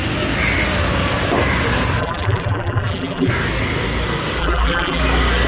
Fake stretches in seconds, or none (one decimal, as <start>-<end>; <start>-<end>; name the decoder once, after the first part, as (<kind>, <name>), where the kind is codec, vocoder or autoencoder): 2.0-3.3 (vocoder, BigVGAN v2); 4.4-5.0